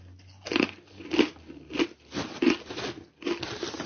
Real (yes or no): yes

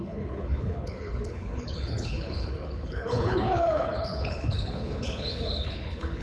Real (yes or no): no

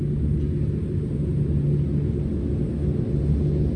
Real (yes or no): yes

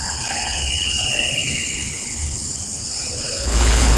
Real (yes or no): no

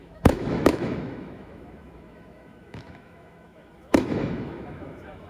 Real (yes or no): no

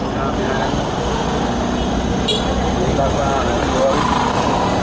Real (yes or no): yes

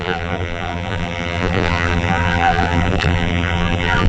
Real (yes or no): no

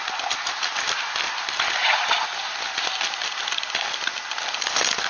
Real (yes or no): yes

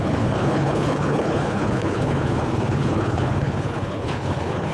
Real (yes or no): no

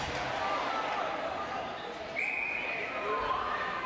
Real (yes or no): yes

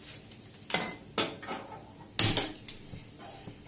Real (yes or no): yes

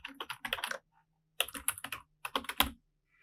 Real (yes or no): yes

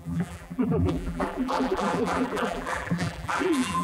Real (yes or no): no